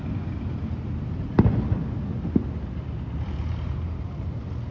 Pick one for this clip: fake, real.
real